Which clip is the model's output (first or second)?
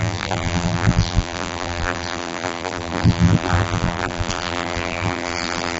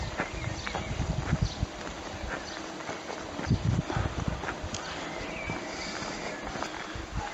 first